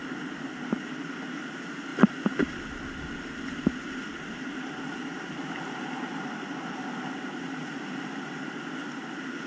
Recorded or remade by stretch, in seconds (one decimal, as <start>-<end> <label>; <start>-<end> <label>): 0.0-9.5 recorded